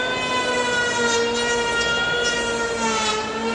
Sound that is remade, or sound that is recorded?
recorded